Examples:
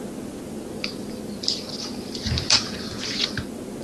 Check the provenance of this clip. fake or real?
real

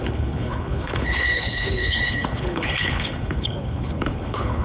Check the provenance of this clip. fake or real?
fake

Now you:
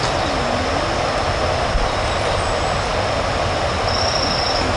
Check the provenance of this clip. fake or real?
real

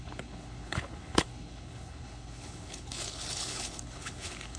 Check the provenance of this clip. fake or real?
fake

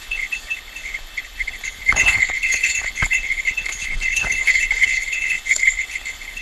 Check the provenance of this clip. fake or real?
fake